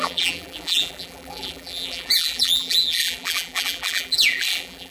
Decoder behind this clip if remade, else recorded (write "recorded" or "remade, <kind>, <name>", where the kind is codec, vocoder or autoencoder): remade, vocoder, BigVGAN v2